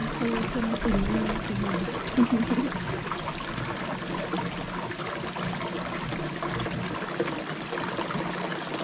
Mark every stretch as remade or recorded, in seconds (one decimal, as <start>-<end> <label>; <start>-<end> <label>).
0.0-8.8 recorded